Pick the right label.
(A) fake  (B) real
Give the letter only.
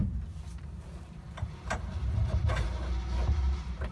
A